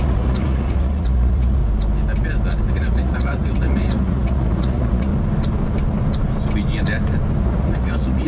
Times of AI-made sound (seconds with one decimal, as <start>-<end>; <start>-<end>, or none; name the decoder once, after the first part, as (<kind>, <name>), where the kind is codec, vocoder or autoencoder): 0.0-1.6 (vocoder, Vocos); 2.7-5.1; 7.4-8.3